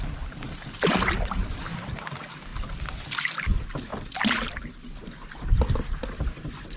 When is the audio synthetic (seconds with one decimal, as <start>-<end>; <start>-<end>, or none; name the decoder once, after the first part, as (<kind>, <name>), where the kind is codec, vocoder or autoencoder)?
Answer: none